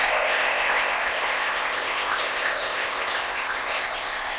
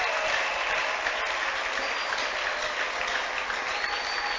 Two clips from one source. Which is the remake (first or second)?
first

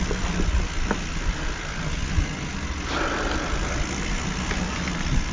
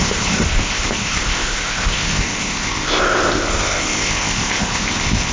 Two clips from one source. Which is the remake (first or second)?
second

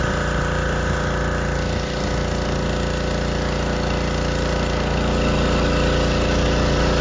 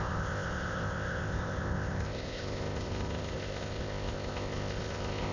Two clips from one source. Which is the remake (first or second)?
second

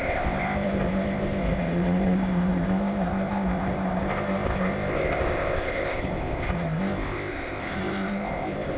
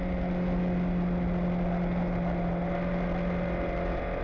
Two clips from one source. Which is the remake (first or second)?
first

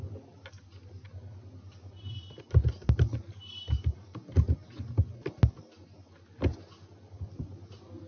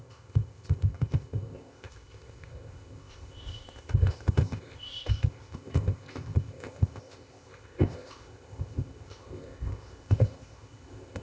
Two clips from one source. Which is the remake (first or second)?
second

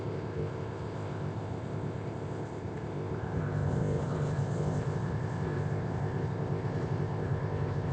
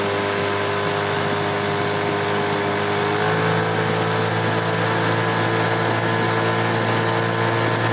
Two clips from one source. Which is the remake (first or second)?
first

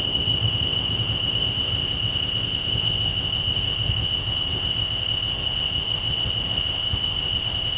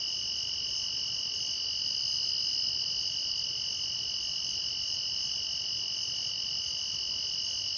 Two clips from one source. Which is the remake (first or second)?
first